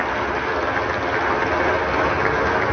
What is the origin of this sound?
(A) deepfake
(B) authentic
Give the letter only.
B